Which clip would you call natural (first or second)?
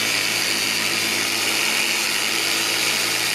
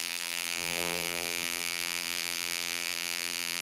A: first